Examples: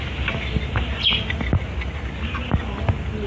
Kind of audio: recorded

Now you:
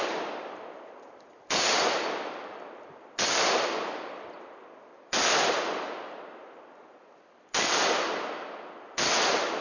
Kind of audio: recorded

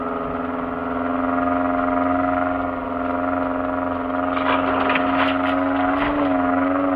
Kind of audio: recorded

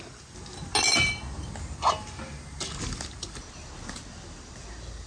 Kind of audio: recorded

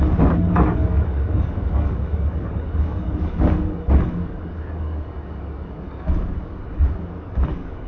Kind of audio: remade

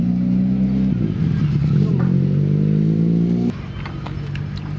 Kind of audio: recorded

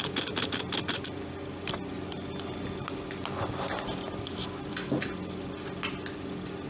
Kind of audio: recorded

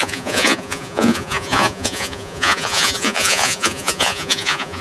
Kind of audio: remade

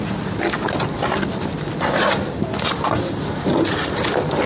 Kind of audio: recorded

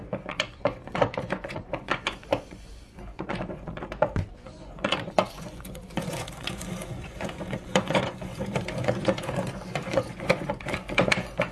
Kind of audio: remade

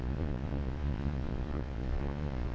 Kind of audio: remade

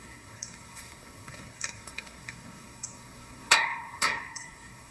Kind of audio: remade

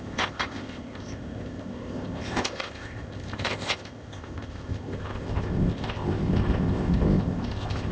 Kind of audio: remade